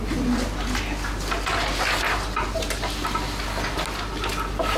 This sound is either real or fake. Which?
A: real